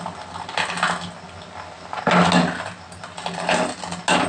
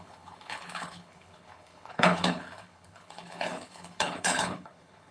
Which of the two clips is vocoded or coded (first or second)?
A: second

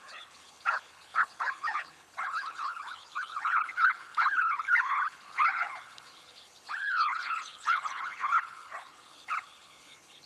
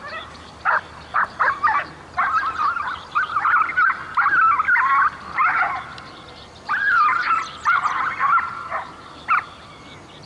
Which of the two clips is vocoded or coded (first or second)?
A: first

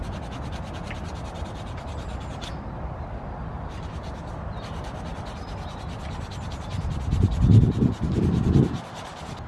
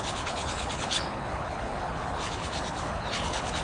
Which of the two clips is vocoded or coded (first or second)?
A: second